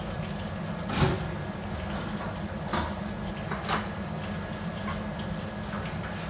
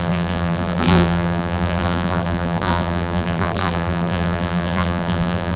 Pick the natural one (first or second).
first